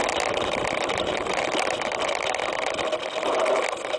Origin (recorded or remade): recorded